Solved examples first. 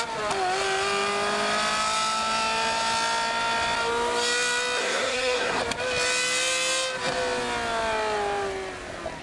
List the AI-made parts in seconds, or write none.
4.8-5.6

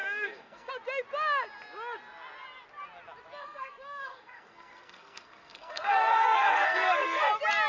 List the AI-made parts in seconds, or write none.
0.0-0.7; 3.4-7.3

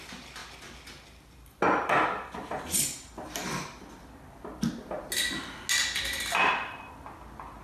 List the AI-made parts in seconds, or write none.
none